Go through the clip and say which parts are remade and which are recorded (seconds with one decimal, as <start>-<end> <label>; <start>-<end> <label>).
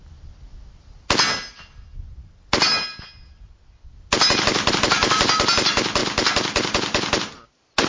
0.0-7.9 recorded